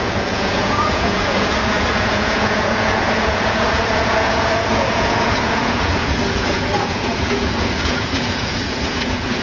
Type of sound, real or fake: fake